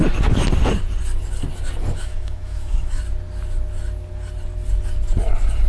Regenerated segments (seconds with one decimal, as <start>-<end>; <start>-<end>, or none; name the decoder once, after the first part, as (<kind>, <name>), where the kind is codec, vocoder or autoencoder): 2.0-3.0 (autoencoder, DAC-VAE)